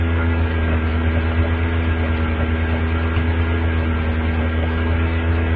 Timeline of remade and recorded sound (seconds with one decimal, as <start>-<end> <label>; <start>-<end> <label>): 0.0-1.0 remade; 1.0-4.4 recorded; 4.4-5.6 remade